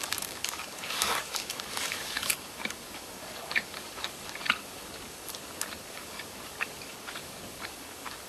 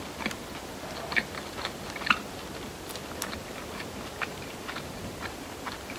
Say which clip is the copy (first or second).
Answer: first